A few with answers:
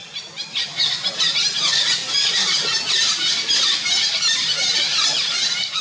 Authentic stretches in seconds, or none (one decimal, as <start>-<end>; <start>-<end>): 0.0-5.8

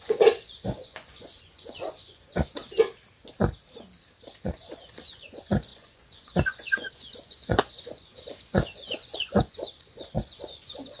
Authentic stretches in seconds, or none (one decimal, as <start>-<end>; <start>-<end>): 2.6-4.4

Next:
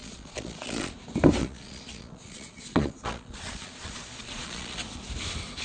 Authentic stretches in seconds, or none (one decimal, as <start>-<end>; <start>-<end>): 0.9-1.4; 4.8-5.6

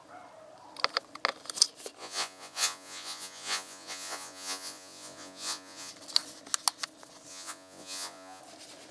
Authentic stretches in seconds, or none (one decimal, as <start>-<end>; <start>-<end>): 0.0-2.0; 5.9-7.3; 8.4-8.9

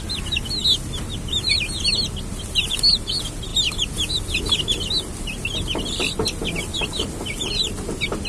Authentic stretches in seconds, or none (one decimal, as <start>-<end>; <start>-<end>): 0.0-8.3

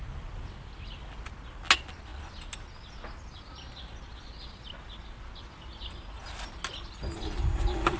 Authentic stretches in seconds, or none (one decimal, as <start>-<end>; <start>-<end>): 0.0-8.0

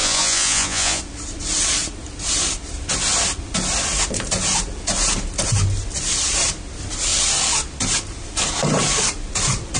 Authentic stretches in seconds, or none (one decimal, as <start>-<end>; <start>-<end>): 1.0-9.8